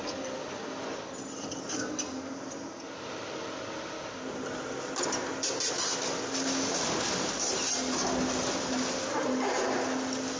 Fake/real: real